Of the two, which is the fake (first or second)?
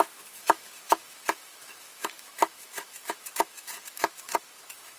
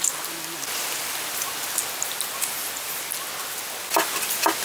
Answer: first